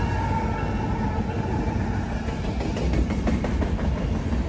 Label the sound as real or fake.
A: real